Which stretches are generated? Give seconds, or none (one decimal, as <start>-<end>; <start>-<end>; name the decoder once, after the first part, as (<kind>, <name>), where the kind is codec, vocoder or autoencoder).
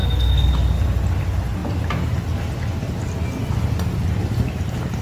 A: 0.0-0.5 (codec, SNAC)